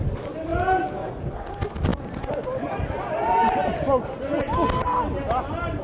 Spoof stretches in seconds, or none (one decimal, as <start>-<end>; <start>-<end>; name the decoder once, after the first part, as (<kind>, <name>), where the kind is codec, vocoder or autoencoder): 0.5-1.1 (vocoder, Vocos)